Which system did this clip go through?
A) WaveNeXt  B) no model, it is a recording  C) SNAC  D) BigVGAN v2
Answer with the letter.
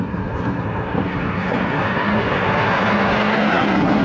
C